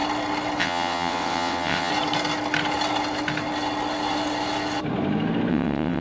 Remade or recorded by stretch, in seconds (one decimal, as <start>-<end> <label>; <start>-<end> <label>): 0.0-0.6 recorded; 0.6-1.9 remade; 1.9-5.5 recorded; 5.5-6.0 remade